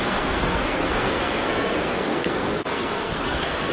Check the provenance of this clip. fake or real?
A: fake